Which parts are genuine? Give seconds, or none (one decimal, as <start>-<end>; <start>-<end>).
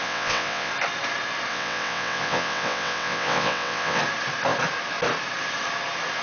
0.7-1.5; 4.0-6.2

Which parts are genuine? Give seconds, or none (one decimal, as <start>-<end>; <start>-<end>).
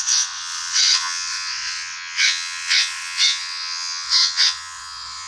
none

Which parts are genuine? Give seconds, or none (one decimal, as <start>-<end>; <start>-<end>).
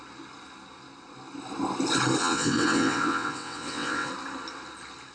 0.0-2.2; 4.1-5.1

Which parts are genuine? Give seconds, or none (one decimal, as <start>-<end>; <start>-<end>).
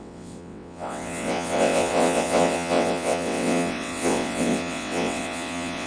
none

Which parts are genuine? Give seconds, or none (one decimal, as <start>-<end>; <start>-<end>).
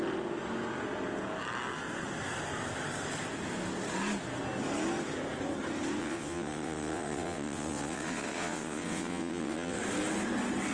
0.0-6.0; 9.8-10.7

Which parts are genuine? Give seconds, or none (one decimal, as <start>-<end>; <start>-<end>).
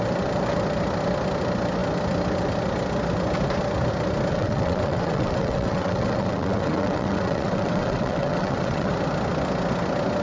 0.0-4.3; 8.9-10.2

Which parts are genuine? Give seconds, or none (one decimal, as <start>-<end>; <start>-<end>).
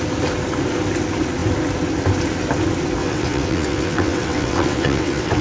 0.0-3.0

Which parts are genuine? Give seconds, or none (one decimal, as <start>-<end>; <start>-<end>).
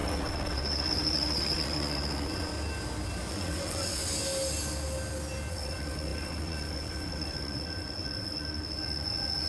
2.5-3.3; 4.0-5.5